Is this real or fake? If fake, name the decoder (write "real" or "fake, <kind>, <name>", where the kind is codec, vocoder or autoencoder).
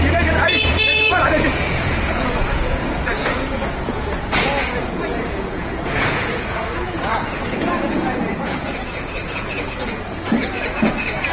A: fake, vocoder, Vocos